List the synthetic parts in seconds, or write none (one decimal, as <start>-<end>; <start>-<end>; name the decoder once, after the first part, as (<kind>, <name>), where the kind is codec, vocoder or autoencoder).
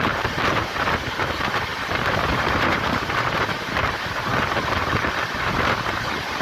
0.0-4.3 (vocoder, BigVGAN v2); 5.3-6.4